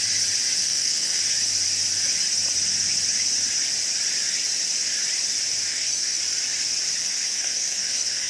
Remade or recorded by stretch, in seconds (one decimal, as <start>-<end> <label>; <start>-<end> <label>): 0.0-0.6 recorded; 0.6-1.2 remade; 1.2-5.7 recorded; 5.7-6.2 remade; 6.2-7.0 recorded; 7.0-8.3 remade